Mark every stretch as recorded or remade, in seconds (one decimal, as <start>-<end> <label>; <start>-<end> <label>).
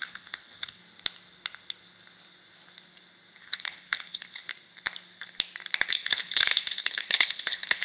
0.0-0.8 remade; 0.8-3.4 recorded; 3.4-4.5 remade; 4.5-5.9 recorded; 5.9-7.8 remade